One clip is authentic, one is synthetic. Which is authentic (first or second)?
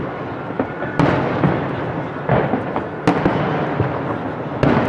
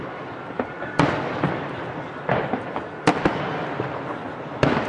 first